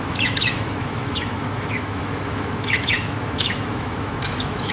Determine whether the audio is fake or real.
fake